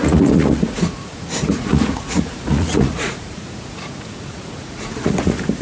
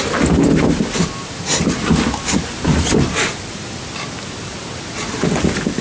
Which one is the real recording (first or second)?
second